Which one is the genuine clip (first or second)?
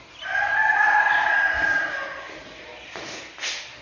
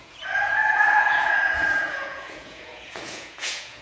first